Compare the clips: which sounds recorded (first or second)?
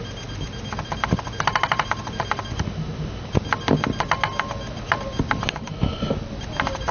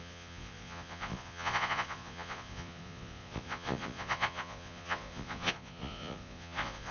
first